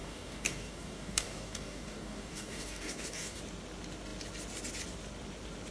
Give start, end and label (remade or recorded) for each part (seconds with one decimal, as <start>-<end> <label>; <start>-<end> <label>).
0.0-3.4 remade; 3.4-5.7 recorded